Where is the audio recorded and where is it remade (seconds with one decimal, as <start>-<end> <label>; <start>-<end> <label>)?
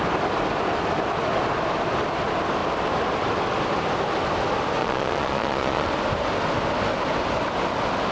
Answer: 0.0-4.8 recorded; 4.8-5.9 remade; 5.9-8.1 recorded